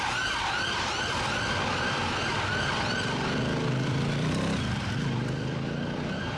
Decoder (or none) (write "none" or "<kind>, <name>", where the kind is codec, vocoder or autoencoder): vocoder, BigVGAN v2